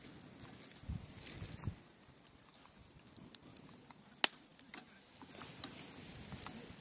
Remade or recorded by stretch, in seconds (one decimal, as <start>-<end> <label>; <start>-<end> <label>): 0.0-6.8 recorded